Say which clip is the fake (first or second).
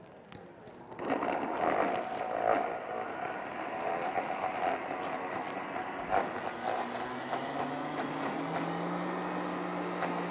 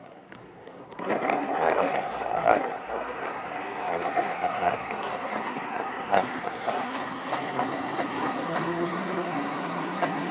second